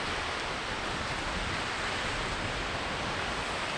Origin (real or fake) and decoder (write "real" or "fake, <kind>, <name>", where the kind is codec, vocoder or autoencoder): fake, vocoder, BigVGAN v2